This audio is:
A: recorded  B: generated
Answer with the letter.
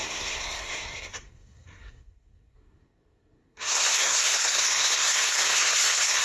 B